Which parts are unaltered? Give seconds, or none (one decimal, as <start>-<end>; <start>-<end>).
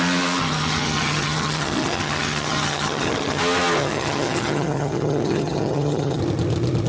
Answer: 0.0-0.4; 3.4-3.8; 6.2-6.9